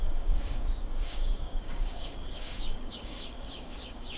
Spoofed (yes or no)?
yes